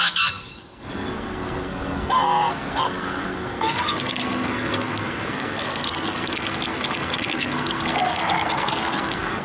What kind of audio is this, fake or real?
fake